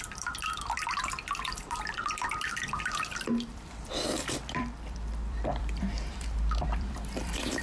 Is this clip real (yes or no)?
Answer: no